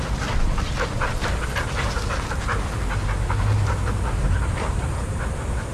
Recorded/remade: recorded